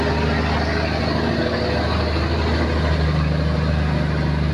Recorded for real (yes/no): yes